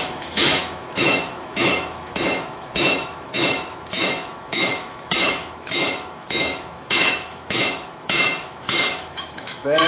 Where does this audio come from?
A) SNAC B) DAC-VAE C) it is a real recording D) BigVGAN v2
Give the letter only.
B